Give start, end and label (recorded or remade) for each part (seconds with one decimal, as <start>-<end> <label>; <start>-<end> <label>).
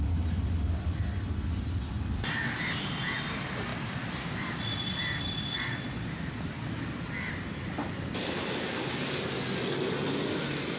0.0-3.7 recorded; 3.7-4.5 remade; 4.5-10.8 recorded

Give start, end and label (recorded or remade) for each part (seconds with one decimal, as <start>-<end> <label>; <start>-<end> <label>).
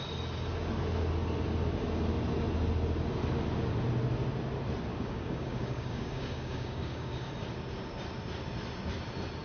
0.0-4.9 recorded; 4.9-7.3 remade; 7.3-9.4 recorded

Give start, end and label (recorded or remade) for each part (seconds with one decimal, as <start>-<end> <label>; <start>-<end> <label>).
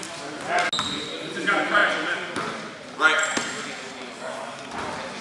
0.0-5.2 recorded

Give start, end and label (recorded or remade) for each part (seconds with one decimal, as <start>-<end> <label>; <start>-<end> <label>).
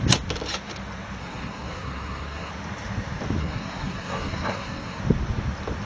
0.0-1.2 recorded; 1.2-2.5 remade; 2.5-3.4 recorded; 3.4-5.0 remade; 5.0-5.9 recorded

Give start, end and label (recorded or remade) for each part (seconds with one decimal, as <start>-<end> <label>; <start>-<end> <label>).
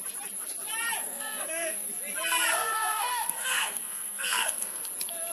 0.0-1.0 recorded; 1.0-1.9 remade; 1.9-2.5 recorded; 2.5-4.8 remade; 4.8-5.3 recorded